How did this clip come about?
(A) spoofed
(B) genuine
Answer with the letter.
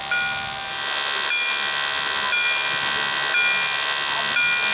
B